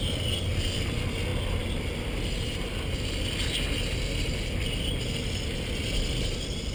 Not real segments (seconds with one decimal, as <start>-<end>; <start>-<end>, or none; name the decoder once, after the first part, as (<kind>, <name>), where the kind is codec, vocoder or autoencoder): none